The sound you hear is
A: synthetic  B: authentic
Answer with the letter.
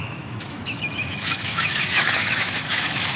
A